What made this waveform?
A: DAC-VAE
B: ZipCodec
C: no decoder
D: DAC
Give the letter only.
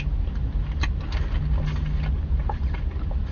C